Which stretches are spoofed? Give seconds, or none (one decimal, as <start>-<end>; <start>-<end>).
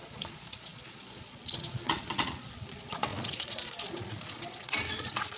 0.0-5.4